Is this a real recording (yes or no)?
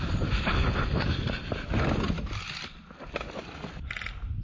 yes